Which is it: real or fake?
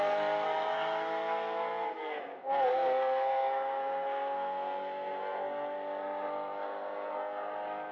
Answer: fake